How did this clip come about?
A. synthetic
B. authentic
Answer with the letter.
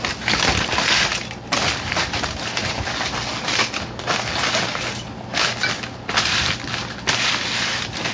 B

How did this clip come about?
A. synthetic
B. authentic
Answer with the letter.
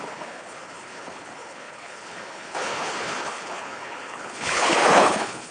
A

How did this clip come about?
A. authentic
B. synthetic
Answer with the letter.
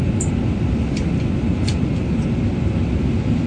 A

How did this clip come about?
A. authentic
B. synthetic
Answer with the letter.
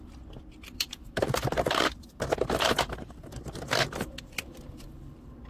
B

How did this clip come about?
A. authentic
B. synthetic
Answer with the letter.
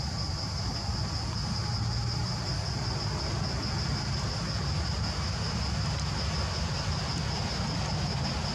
A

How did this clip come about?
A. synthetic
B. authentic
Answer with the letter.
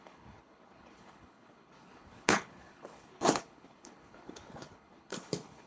A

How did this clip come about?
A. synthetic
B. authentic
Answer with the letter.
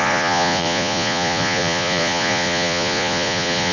A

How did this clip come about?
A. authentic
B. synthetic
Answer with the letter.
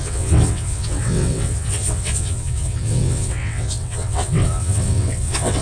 B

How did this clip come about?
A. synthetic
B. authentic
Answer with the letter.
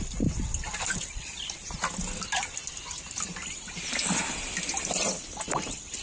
B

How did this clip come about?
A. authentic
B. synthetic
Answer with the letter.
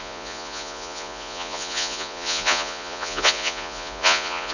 B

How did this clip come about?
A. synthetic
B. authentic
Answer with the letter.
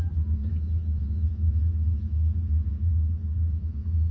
A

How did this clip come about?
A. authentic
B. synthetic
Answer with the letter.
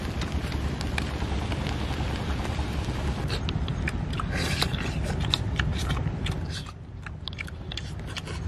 A